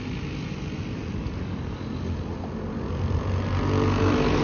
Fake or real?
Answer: real